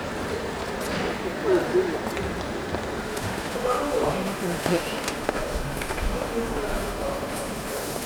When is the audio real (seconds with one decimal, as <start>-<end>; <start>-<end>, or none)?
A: 0.0-3.1